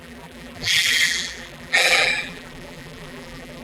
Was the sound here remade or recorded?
remade